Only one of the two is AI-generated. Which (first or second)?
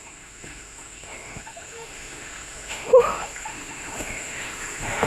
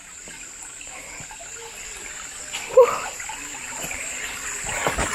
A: first